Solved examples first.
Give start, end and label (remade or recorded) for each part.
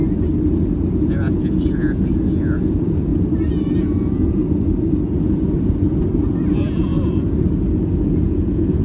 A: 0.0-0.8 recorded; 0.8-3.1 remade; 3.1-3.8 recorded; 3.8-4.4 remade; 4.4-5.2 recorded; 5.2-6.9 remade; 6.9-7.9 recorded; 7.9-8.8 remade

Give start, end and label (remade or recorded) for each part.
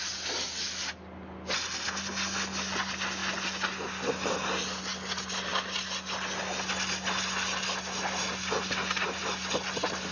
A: 0.0-10.1 recorded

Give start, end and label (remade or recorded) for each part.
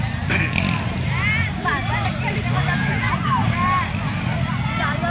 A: 0.0-5.1 recorded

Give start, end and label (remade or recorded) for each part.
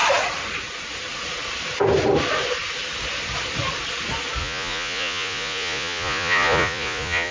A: 0.0-4.4 recorded; 4.4-7.3 remade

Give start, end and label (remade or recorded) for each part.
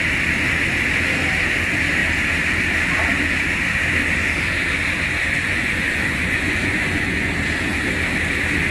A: 0.0-5.2 recorded; 5.2-7.3 remade; 7.3-8.7 recorded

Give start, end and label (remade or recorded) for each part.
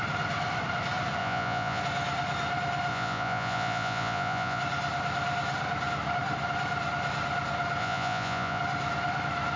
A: 0.0-1.2 recorded; 1.2-1.8 remade; 1.8-2.9 recorded; 2.9-4.6 remade; 4.6-7.8 recorded; 7.8-8.6 remade; 8.6-9.6 recorded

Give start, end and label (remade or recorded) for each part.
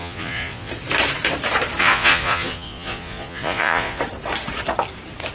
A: 0.0-0.7 remade; 0.7-1.8 recorded; 1.8-4.0 remade; 4.0-5.3 recorded